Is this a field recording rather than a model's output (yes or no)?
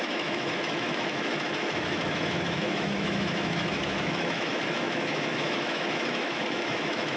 no